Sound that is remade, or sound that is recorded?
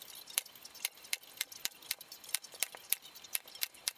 remade